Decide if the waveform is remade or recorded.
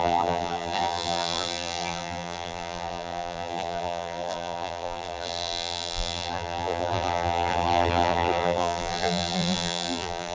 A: remade